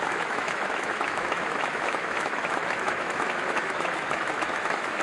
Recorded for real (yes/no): no